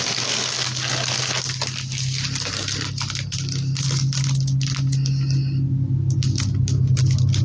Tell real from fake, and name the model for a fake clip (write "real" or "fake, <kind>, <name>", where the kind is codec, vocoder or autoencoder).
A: real